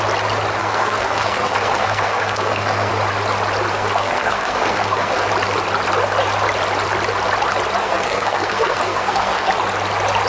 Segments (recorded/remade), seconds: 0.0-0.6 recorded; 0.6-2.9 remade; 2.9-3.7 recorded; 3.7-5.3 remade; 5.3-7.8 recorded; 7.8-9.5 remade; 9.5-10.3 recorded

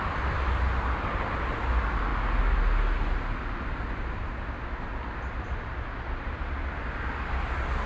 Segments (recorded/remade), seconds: 0.0-7.9 recorded

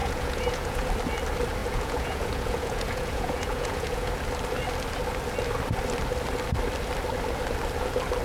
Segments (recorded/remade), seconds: 0.0-0.9 remade; 0.9-1.6 recorded; 1.6-4.1 remade; 4.1-8.2 recorded

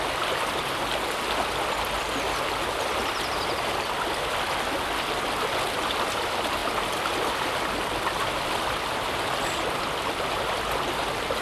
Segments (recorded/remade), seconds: 0.0-11.4 recorded